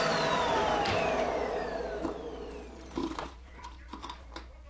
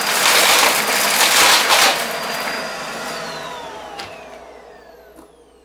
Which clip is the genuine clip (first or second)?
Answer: second